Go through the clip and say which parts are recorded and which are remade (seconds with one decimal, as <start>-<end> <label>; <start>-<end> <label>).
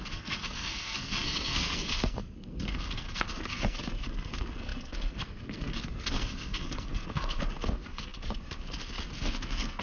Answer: 0.0-9.8 remade